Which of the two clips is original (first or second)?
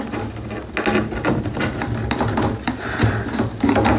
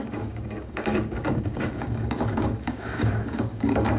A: first